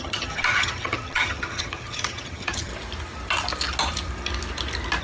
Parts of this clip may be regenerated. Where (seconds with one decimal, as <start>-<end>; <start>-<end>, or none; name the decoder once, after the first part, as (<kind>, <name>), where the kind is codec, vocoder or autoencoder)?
0.0-2.7 (vocoder, HiFi-GAN)

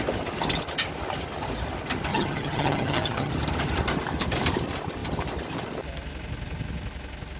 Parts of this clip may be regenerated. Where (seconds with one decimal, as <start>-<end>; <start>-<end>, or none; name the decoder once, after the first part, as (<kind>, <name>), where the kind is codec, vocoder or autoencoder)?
2.1-3.3 (vocoder, HiFi-GAN)

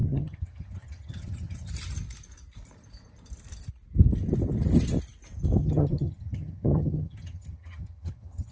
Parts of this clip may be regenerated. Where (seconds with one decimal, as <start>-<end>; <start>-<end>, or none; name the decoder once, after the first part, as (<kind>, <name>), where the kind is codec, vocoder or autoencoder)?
0.0-1.7 (vocoder, HiFi-GAN); 5.6-8.5

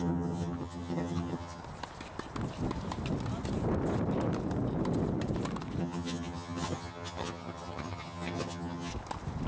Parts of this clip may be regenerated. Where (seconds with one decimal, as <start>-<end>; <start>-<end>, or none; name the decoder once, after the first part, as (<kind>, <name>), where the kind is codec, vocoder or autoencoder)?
0.0-1.6 (vocoder, HiFi-GAN); 5.8-8.9

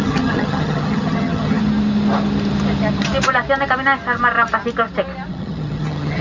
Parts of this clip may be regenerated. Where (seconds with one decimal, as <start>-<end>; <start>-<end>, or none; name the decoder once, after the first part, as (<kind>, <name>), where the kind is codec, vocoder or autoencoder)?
0.0-1.6 (vocoder, HiFi-GAN); 5.3-6.2

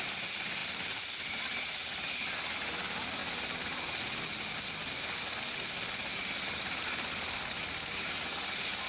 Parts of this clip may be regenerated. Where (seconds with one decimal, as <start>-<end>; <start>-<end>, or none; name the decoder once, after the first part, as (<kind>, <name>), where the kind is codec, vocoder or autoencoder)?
none